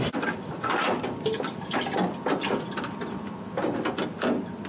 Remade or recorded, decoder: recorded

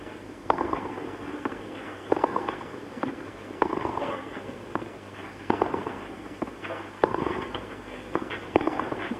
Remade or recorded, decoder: remade, codec, SNAC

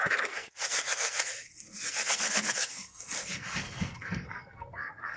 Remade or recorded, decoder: remade, codec, SNAC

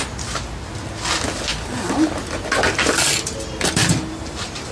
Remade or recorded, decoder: recorded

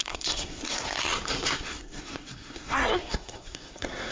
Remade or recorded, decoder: remade, codec, SNAC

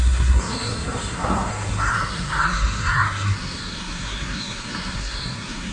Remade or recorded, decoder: remade, codec, SNAC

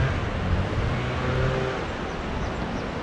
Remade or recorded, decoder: recorded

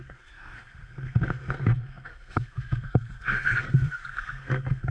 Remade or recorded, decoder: remade, codec, SNAC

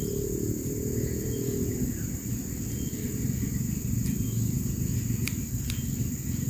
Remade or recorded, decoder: recorded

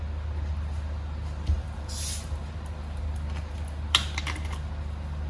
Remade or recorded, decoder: recorded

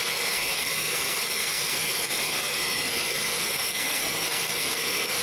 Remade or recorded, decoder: remade, codec, SNAC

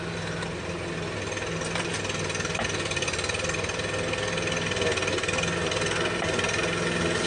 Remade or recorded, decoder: recorded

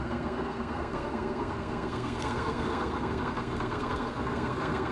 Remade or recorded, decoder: remade, codec, SNAC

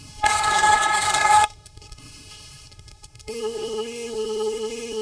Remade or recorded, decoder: remade, codec, SNAC